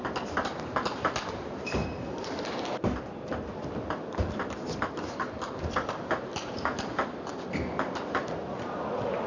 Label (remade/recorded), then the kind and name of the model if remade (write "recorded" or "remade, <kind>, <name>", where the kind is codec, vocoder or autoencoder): remade, vocoder, BigVGAN v2